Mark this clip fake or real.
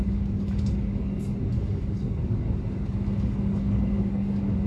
fake